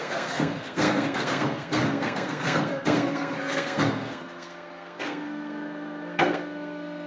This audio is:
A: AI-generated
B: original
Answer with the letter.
A